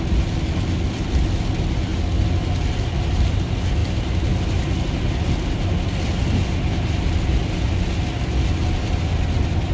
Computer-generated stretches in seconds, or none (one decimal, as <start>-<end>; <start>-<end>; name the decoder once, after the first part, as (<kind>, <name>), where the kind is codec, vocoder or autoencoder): none